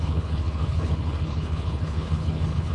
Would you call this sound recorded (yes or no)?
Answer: no